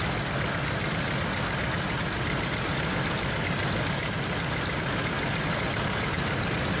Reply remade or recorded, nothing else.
recorded